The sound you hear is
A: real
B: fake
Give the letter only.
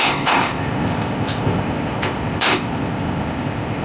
B